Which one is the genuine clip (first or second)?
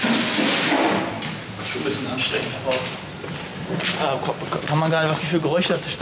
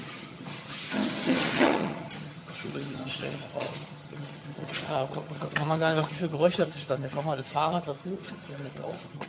first